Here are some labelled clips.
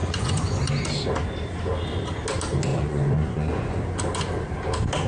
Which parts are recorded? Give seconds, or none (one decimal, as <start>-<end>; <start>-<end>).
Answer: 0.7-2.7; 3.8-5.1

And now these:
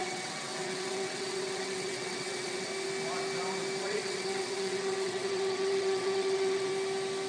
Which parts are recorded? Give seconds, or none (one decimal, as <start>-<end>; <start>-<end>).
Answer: 2.7-3.8; 6.7-7.3

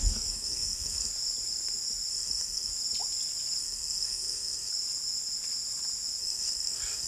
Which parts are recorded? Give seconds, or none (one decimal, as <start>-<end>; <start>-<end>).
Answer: 1.1-2.1; 2.7-3.6; 4.7-6.2

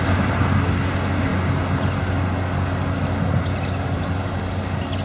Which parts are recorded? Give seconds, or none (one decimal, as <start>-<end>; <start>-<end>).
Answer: 0.0-5.0

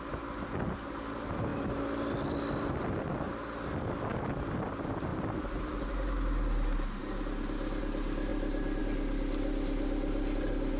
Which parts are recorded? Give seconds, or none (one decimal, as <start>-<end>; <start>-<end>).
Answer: 0.0-10.8

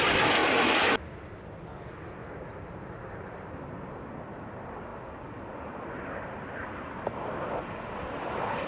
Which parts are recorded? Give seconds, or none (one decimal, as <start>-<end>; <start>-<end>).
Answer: 0.0-2.2; 3.4-8.7

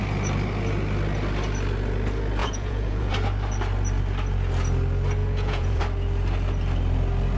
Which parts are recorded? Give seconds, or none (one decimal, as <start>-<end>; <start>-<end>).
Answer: 0.0-2.4; 3.1-5.2; 5.8-7.4

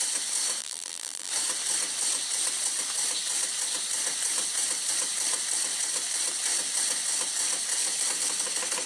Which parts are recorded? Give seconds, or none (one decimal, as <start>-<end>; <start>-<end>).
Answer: 0.0-0.6; 1.3-8.9